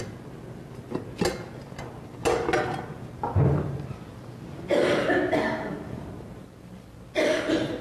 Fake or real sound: real